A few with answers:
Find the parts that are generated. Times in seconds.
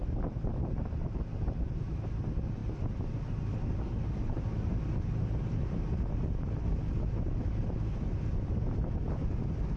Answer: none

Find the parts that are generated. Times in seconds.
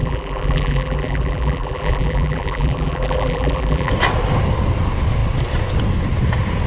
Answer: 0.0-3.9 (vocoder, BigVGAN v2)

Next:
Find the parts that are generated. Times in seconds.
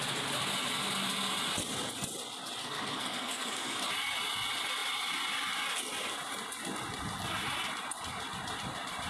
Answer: 2.6-3.8 (codec, SNAC)